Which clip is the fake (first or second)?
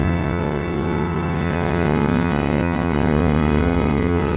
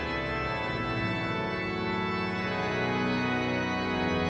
first